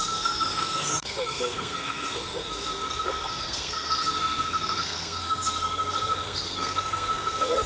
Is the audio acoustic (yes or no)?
no